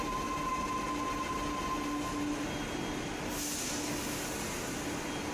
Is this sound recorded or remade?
recorded